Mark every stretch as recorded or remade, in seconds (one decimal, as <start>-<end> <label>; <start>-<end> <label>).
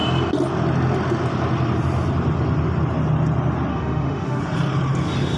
0.0-3.7 recorded; 3.7-4.4 remade; 4.4-5.4 recorded